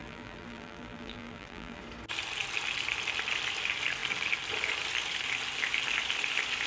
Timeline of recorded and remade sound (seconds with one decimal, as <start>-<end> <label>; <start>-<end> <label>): 0.0-1.8 remade; 1.8-6.7 recorded